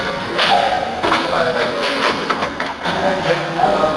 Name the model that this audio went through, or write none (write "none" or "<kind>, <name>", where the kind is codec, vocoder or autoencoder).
codec, SNAC